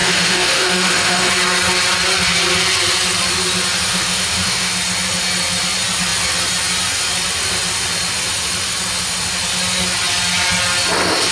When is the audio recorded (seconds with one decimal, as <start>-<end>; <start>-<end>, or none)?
1.3-3.9; 4.7-11.3